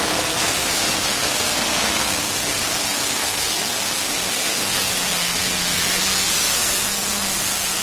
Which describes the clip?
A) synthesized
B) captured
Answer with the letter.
A